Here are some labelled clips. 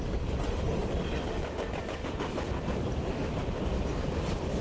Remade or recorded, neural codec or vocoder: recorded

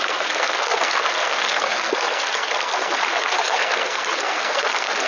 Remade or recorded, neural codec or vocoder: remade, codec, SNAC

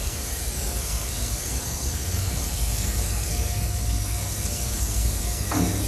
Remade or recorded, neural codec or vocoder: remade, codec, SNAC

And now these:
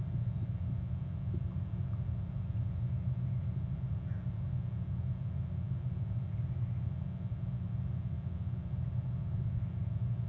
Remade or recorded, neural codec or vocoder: recorded